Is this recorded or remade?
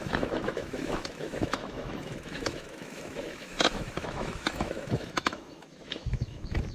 remade